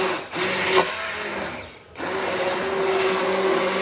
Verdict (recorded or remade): recorded